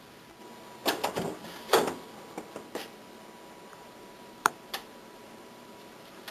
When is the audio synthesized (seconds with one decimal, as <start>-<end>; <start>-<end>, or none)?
3.7-6.3